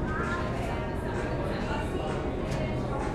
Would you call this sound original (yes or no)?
yes